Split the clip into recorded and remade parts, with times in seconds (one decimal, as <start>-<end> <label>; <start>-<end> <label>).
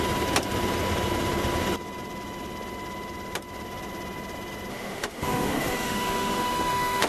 0.0-4.7 recorded; 4.7-7.1 remade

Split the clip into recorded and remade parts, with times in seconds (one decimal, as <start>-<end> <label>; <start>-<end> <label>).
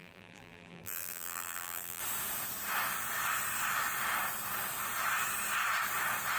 0.0-2.0 remade; 2.0-6.4 recorded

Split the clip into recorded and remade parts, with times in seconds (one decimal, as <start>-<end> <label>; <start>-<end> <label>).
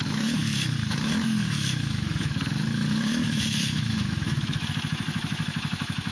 0.0-6.1 remade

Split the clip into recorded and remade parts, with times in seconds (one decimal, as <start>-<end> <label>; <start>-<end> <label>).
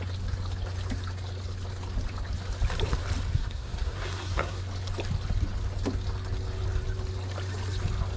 0.0-3.3 recorded; 3.3-4.6 remade; 4.6-8.2 recorded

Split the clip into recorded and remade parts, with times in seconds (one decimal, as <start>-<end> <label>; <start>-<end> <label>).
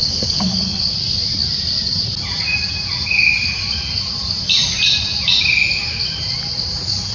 0.0-0.8 remade; 0.8-7.1 recorded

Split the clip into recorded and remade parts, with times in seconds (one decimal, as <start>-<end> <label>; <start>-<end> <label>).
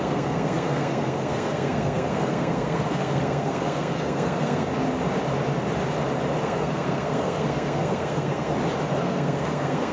0.0-4.7 remade; 4.7-6.4 recorded; 6.4-8.5 remade; 8.5-9.0 recorded; 9.0-9.9 remade